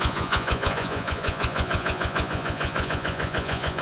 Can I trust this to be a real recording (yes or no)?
no